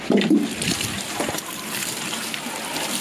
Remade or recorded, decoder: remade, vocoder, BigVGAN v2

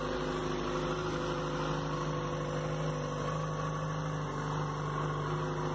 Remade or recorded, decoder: recorded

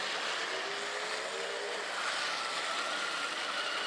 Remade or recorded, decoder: recorded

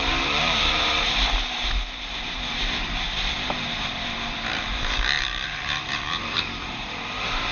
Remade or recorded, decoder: remade, vocoder, BigVGAN v2